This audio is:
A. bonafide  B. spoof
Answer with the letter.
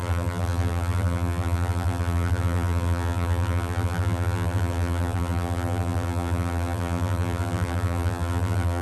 B